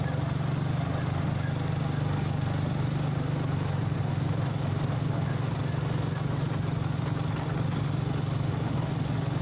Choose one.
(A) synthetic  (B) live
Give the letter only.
B